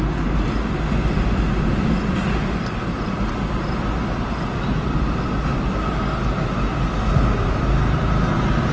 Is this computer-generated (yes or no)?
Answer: no